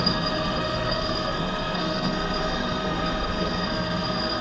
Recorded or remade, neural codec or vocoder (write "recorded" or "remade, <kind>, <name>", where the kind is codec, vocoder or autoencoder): remade, codec, SNAC